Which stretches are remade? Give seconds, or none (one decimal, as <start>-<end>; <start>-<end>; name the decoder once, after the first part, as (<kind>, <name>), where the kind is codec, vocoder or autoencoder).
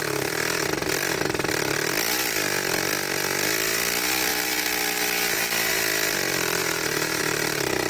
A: 4.3-5.7 (vocoder, BigVGAN v2); 6.6-7.2